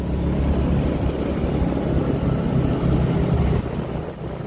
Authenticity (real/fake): real